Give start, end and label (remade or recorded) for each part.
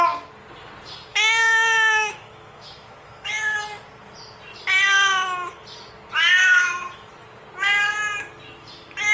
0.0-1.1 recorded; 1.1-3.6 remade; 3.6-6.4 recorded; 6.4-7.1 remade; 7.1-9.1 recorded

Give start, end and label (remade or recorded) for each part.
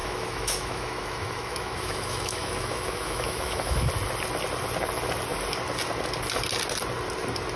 0.0-3.9 remade; 3.9-7.6 recorded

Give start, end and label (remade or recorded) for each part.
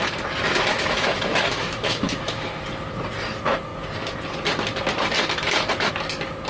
0.0-0.7 recorded; 0.7-2.6 remade; 2.6-6.5 recorded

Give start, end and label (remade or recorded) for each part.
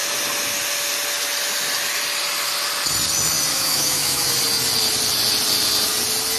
0.0-3.5 recorded; 3.5-4.3 remade; 4.3-6.4 recorded